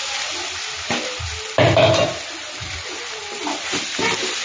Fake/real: real